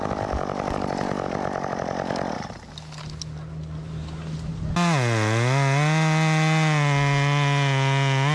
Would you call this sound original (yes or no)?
yes